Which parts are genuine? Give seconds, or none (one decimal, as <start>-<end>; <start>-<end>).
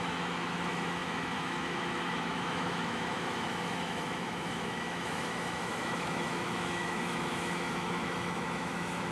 none